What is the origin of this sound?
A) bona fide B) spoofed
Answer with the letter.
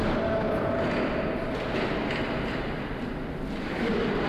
A